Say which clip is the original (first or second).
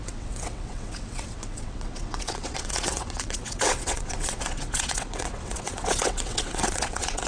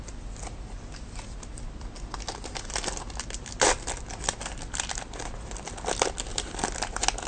second